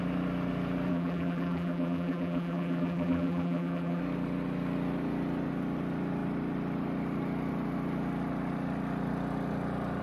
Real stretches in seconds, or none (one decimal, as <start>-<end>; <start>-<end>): 0.0-0.9; 4.0-10.0